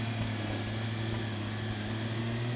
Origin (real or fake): real